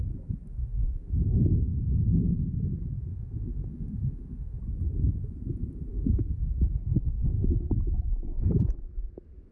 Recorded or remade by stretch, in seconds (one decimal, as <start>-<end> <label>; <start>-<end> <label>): 0.0-0.6 recorded; 0.6-2.5 remade; 2.5-3.1 recorded; 3.1-4.6 remade; 4.6-5.9 recorded; 5.9-6.5 remade; 6.5-6.9 recorded; 6.9-7.5 remade; 7.5-9.5 recorded